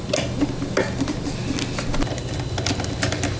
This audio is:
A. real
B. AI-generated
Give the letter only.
A